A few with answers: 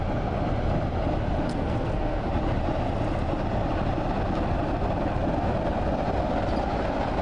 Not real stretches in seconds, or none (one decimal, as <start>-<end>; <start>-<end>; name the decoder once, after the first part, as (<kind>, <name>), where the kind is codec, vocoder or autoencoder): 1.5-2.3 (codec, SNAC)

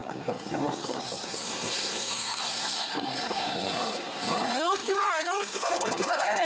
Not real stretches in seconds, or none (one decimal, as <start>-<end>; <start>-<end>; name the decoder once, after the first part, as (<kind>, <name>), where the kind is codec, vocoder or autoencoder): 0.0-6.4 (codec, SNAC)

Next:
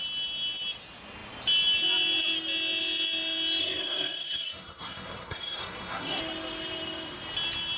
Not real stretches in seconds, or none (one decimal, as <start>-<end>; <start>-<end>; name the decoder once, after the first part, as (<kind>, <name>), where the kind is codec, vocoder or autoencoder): 3.6-6.2 (codec, SNAC)

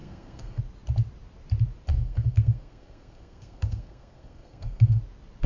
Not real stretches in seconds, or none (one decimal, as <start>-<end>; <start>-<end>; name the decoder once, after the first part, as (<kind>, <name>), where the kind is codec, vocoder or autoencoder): 0.0-0.6 (codec, SNAC); 1.9-5.0

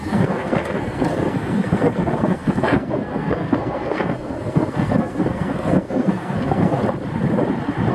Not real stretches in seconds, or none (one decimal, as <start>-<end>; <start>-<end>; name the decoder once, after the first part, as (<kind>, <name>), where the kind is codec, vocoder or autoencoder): 0.0-6.8 (codec, SNAC)

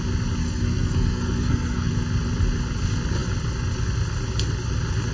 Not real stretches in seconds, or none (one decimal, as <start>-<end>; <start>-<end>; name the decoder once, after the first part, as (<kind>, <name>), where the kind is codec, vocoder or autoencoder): 0.4-1.9 (codec, SNAC)

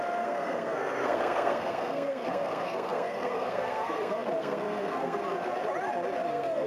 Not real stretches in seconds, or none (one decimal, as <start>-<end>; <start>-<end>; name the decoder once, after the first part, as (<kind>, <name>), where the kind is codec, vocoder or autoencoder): 0.0-5.2 (codec, SNAC); 6.3-6.7